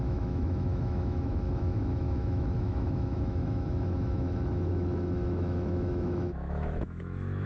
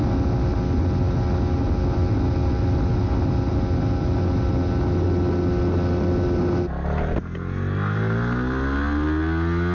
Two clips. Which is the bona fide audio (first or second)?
second